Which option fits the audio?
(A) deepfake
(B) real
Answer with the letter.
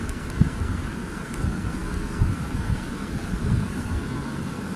A